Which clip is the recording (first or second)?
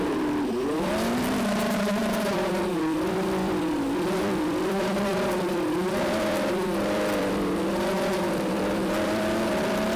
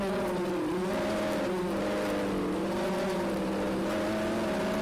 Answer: second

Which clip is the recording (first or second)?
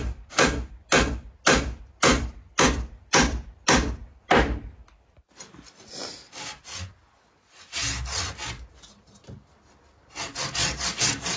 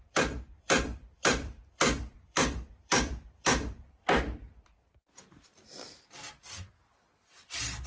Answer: first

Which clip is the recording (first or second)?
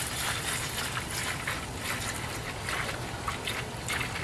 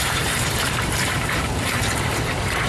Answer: first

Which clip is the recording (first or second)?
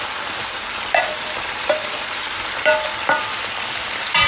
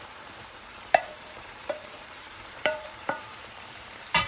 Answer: first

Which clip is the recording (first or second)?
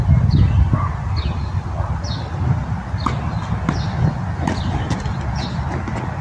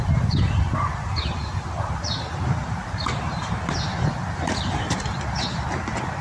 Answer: first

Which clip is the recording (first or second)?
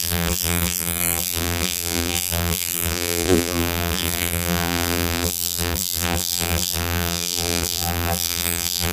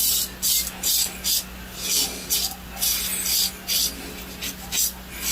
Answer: second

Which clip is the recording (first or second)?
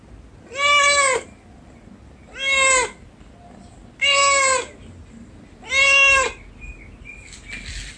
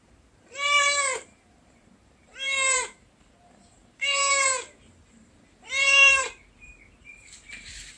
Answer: first